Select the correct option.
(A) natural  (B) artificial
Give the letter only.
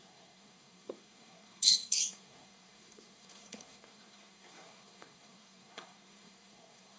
B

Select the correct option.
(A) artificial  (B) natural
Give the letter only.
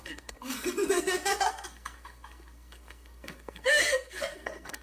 A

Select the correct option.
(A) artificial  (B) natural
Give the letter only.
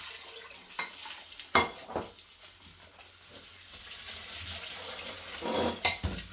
B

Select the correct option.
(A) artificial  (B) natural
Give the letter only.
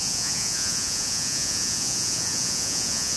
A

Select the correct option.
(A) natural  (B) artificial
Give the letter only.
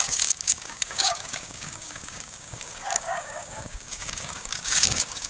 B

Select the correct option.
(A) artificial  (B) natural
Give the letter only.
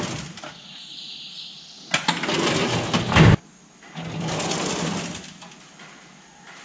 B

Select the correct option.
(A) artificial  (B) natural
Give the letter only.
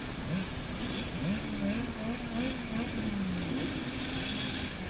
B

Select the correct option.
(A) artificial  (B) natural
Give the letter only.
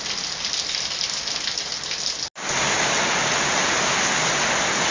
B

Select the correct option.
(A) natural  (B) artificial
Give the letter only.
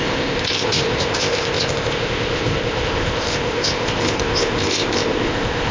B